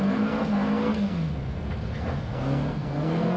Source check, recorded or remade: remade